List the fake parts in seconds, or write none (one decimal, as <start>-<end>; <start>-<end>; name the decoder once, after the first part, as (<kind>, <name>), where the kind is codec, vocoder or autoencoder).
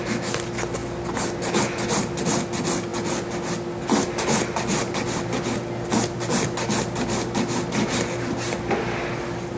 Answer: none